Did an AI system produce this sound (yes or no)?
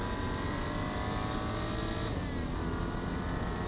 no